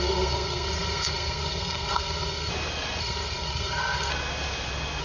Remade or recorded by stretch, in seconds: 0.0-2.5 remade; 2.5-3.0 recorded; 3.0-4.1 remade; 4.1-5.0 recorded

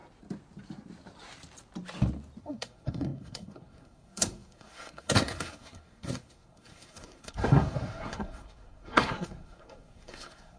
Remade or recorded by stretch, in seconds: 0.0-2.4 recorded; 2.4-10.6 remade